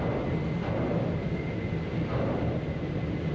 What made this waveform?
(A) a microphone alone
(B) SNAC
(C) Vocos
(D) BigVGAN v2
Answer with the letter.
A